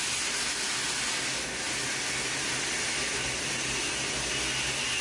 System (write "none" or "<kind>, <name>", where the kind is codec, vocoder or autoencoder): none